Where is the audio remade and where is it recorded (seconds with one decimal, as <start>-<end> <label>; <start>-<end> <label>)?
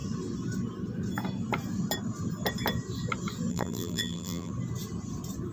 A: 0.0-3.5 recorded; 3.5-4.5 remade; 4.5-5.5 recorded